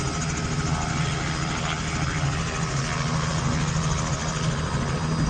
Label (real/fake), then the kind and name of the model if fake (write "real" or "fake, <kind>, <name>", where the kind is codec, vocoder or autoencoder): real